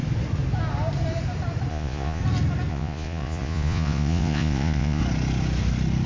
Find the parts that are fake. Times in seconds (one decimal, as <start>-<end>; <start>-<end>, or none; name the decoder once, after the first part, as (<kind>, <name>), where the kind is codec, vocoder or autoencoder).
1.7-2.2 (vocoder, Vocos); 2.7-5.0